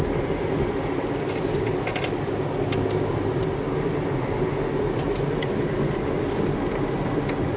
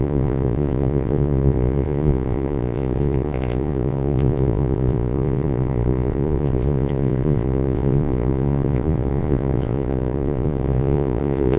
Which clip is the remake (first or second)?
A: second